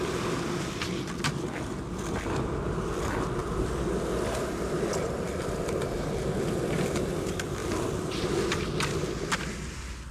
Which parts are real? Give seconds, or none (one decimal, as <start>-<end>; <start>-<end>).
0.0-10.1